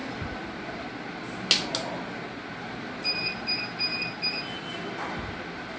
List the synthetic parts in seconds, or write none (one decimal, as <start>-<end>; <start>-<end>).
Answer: none